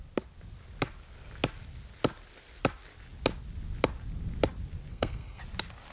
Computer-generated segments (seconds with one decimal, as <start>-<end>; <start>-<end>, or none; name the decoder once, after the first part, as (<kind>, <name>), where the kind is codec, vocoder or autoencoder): 4.9-5.4 (codec, SNAC)